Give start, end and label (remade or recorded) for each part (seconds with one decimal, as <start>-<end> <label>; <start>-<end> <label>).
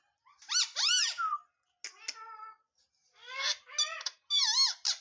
0.0-5.0 recorded